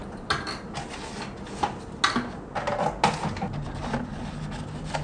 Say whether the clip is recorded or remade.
recorded